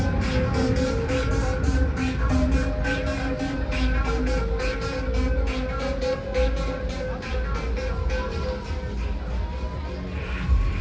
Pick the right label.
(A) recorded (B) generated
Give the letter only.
A